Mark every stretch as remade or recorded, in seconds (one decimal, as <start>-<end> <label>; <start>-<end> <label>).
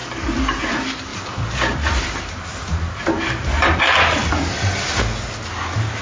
0.0-1.1 recorded; 1.1-4.7 remade; 4.7-6.0 recorded